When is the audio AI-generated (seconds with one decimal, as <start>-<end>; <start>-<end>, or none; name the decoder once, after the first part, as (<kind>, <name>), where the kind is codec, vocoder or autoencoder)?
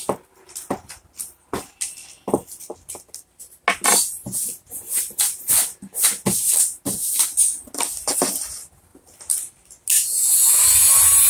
8.9-9.5 (vocoder, BigVGAN v2)